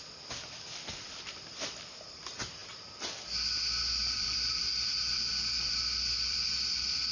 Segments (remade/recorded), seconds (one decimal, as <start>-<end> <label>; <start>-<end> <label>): 0.0-1.0 recorded; 1.0-2.6 remade; 2.6-3.8 recorded; 3.8-4.7 remade; 4.7-5.7 recorded; 5.7-7.1 remade